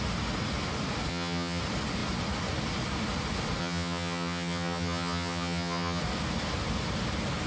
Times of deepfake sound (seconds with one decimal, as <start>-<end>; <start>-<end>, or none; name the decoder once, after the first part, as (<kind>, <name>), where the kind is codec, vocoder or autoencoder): 1.1-1.6 (vocoder, HiFi-GAN); 3.6-6.0